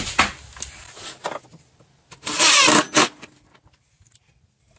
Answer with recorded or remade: recorded